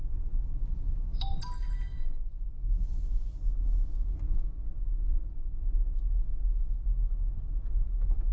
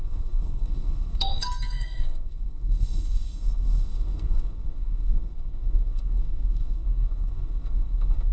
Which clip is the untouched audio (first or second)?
first